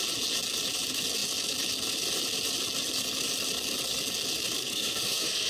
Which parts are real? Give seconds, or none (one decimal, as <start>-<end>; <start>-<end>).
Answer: 0.0-4.6